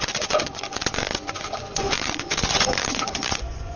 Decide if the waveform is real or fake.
fake